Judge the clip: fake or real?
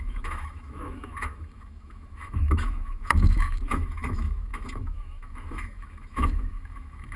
fake